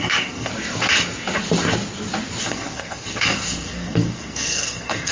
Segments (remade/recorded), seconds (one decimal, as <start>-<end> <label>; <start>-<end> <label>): 0.0-0.5 remade; 0.5-2.4 recorded; 2.4-5.1 remade